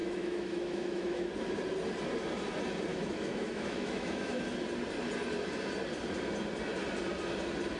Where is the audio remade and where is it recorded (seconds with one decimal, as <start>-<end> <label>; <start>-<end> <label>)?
0.0-1.3 remade; 1.3-2.9 recorded; 2.9-4.4 remade; 4.4-7.8 recorded